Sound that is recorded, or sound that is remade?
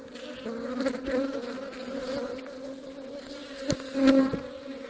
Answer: recorded